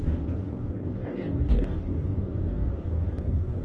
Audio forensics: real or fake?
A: fake